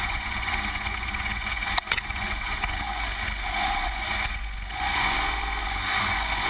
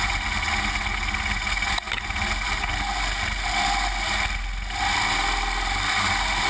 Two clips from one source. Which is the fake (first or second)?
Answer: first